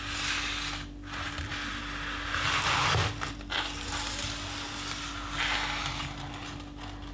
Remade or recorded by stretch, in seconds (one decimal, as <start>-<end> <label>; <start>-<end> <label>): 0.0-7.1 recorded